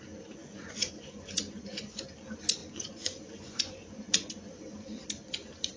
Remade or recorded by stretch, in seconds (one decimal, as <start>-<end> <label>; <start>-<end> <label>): 0.0-0.4 recorded; 0.4-2.0 remade; 2.0-2.6 recorded; 2.6-5.0 remade; 5.0-5.8 recorded